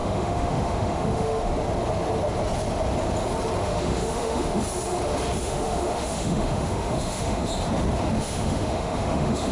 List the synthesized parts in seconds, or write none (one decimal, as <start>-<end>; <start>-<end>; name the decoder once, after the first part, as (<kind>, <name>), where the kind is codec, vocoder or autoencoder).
0.0-1.5 (autoencoder, DAC-VAE); 3.6-4.6; 5.4-7.5; 8.2-9.5